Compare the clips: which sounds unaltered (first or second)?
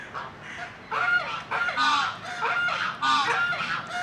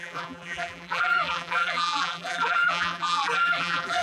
first